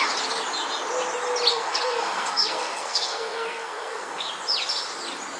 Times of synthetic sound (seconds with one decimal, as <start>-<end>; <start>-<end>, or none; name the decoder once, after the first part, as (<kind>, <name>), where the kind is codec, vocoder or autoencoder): 1.5-4.3 (codec, SNAC)